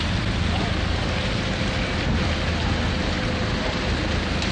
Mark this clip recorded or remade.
recorded